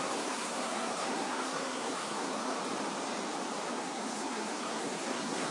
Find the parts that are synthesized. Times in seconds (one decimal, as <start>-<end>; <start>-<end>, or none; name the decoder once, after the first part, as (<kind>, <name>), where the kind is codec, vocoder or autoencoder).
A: 0.0-2.6 (codec, SNAC); 3.7-5.5